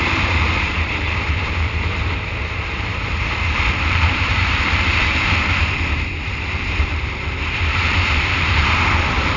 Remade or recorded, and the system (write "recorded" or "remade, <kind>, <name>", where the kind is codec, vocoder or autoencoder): remade, vocoder, BigVGAN v2